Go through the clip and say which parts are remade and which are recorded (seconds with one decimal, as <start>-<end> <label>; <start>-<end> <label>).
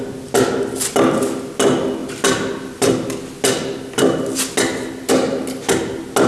0.0-6.3 recorded